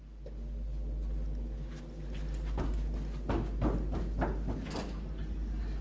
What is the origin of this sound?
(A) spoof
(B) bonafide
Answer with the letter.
B